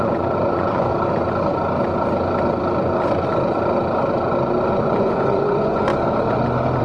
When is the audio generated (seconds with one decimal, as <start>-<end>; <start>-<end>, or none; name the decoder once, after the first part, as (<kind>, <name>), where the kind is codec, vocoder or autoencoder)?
0.0-0.9 (vocoder, Vocos); 4.7-5.9

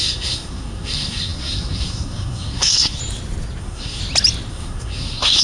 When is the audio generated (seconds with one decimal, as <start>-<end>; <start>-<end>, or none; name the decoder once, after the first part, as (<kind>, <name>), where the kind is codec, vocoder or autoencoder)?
0.0-3.0 (codec, SNAC); 3.6-4.0; 4.5-5.4

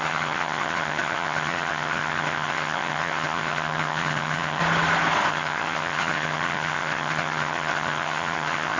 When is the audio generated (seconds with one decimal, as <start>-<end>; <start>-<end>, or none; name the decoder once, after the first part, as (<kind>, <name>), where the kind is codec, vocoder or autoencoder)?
0.0-4.6 (vocoder, HiFi-GAN); 5.3-8.8

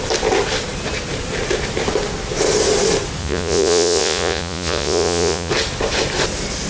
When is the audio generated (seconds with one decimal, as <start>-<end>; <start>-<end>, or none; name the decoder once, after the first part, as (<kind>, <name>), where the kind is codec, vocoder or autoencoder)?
3.2-5.5 (vocoder, Vocos)

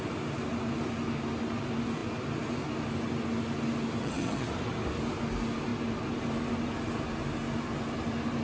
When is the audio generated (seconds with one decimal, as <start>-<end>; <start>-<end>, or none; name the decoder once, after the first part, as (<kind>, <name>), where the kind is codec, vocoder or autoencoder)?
4.0-4.5 (vocoder, HiFi-GAN)